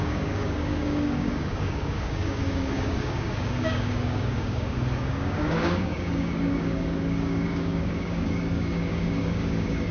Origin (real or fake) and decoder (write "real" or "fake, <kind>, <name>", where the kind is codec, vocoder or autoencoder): fake, codec, DAC